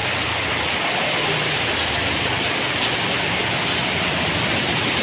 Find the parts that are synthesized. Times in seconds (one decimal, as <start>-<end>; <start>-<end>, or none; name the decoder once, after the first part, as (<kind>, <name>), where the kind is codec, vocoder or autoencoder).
0.0-5.0 (vocoder, BigVGAN v2)